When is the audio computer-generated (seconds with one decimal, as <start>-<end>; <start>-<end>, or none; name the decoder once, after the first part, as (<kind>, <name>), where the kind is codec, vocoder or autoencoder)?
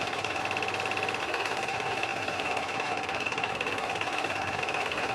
0.0-0.4 (codec, SNAC); 1.2-5.1